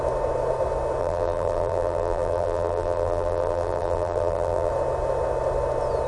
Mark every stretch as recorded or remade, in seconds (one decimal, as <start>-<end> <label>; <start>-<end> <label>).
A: 0.0-1.0 recorded; 1.0-4.7 remade; 4.7-6.1 recorded